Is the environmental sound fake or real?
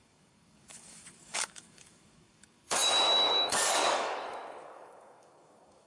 fake